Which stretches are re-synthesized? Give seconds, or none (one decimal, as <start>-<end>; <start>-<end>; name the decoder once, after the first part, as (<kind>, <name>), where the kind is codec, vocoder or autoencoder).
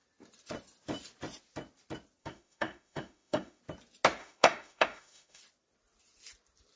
2.2-3.6 (autoencoder, DAC-VAE); 4.2-5.4